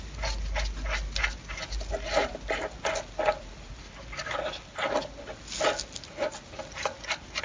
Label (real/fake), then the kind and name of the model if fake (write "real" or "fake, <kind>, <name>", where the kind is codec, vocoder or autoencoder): real